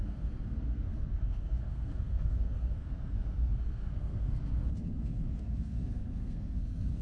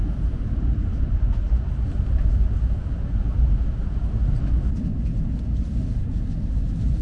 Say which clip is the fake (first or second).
first